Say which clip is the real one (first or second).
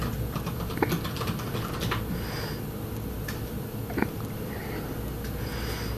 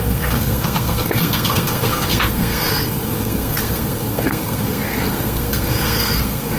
first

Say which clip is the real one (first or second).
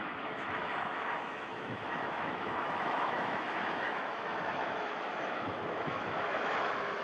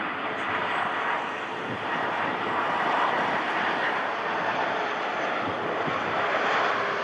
second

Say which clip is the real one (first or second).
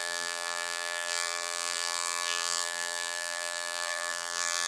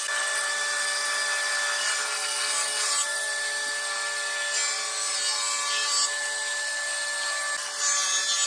second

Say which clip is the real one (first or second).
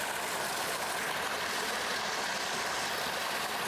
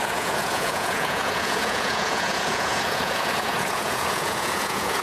first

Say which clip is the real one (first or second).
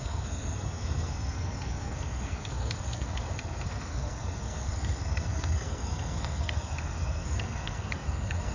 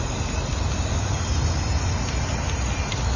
second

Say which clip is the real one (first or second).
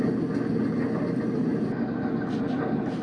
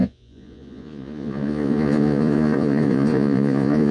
first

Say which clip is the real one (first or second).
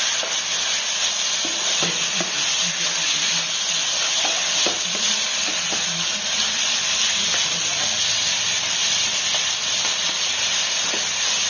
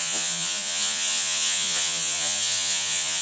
first